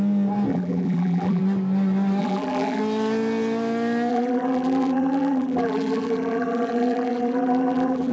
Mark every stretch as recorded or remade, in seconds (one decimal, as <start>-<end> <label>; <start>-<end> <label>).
0.0-0.5 recorded; 0.5-1.4 remade; 1.4-2.2 recorded; 2.2-2.8 remade; 2.8-4.1 recorded; 4.1-8.1 remade